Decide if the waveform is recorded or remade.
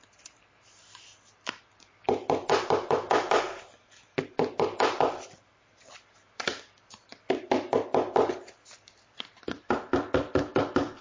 remade